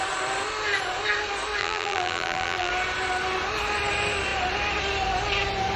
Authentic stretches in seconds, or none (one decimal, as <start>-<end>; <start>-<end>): 0.0-1.6; 2.7-5.8